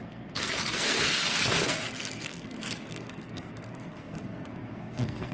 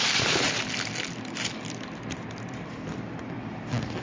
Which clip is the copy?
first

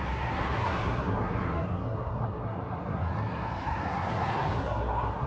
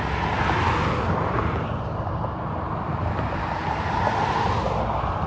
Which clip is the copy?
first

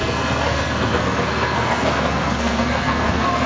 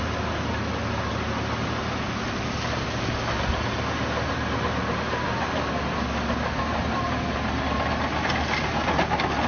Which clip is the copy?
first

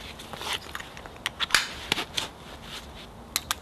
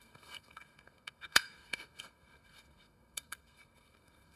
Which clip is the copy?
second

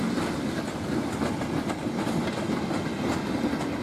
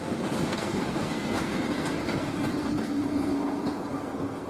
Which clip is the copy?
second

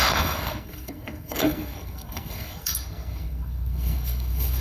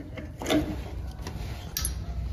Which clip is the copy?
first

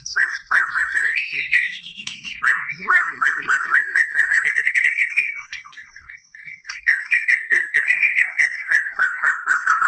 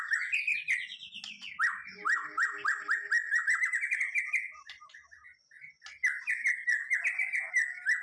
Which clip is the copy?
first